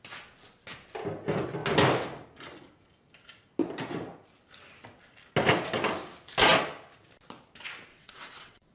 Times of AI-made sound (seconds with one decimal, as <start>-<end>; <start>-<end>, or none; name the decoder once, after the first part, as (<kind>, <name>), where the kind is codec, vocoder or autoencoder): 7.9-8.7 (vocoder, WaveNeXt)